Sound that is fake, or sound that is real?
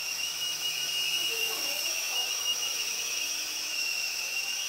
fake